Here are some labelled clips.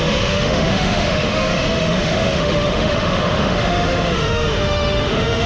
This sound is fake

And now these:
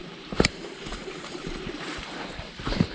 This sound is fake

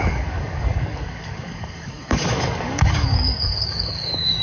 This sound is fake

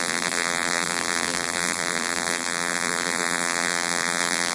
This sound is fake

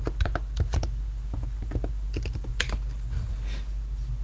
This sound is real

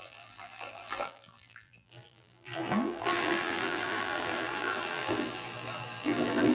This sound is fake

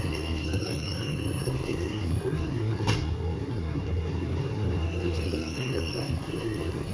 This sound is fake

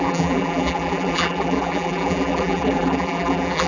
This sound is fake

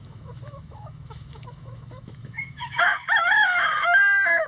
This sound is fake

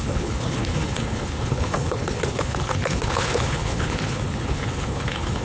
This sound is fake